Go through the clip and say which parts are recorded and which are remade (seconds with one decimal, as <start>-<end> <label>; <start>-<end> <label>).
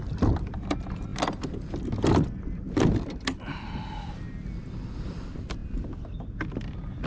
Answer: 0.0-7.1 recorded